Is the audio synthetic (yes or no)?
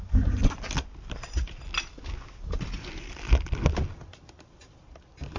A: no